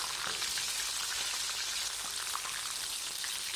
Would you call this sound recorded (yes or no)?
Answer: yes